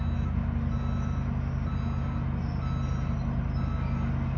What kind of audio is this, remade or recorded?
recorded